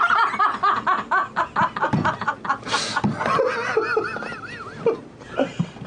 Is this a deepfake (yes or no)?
no